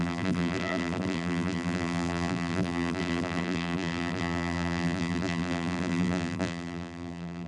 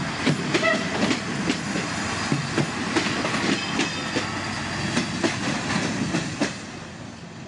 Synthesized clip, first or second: first